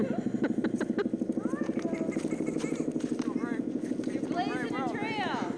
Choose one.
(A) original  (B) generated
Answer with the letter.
A